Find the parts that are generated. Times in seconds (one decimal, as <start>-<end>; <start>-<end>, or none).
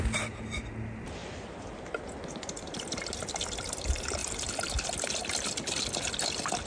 4.2-5.9